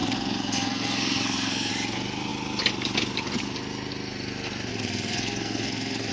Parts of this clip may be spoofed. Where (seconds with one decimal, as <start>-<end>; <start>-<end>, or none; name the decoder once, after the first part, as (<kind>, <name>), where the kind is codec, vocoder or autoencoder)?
0.0-1.7 (codec, SNAC); 4.7-6.1